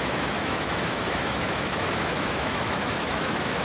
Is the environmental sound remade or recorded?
remade